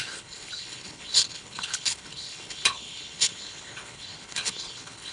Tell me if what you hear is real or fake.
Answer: fake